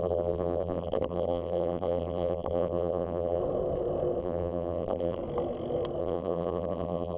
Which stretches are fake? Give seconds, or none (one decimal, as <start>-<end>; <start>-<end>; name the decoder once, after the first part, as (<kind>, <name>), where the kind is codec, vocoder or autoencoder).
0.0-3.4 (vocoder, BigVGAN v2); 4.2-5.2; 6.0-7.2